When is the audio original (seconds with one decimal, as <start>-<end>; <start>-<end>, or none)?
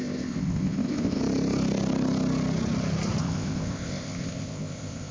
1.2-3.2